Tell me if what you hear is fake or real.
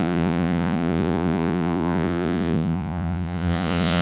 fake